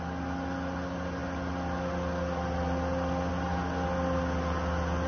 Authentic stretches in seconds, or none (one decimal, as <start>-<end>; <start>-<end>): 0.0-5.1

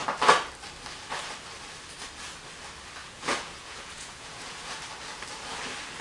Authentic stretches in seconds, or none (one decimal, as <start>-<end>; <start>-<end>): 0.0-3.0; 4.8-6.0

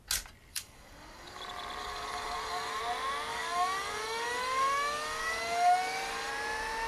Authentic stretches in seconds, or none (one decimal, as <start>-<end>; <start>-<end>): 0.0-0.5; 1.4-1.8; 2.8-3.3; 6.3-6.9

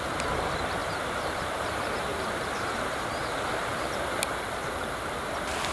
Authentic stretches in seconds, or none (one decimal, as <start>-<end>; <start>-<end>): 0.0-0.8; 4.0-5.7

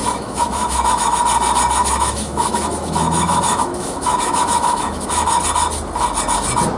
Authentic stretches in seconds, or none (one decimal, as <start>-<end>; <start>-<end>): 1.2-1.8; 5.4-6.8

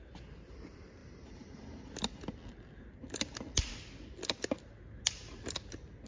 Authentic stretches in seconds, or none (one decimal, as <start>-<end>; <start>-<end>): 0.0-6.1